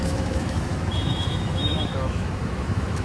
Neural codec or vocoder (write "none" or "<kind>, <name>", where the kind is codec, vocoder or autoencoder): autoencoder, DAC-VAE